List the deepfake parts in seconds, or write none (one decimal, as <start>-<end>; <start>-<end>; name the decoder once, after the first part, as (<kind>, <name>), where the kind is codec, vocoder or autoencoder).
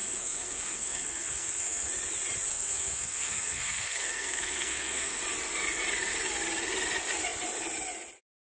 0.0-1.9 (codec, SNAC); 2.5-5.2